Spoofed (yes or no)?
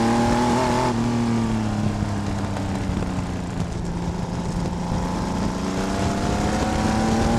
no